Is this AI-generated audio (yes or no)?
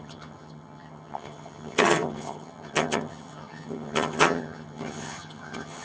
yes